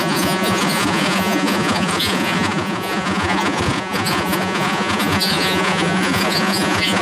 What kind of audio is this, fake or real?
fake